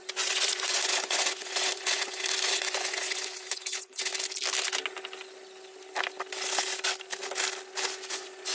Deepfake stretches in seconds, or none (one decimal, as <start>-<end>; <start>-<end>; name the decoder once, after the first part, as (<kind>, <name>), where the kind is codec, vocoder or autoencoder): 0.0-4.1 (vocoder, Vocos); 8.1-8.5